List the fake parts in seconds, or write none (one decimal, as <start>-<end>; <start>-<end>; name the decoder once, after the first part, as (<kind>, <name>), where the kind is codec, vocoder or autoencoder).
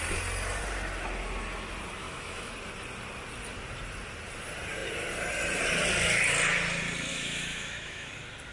2.0-2.5 (autoencoder, DAC-VAE); 7.1-8.1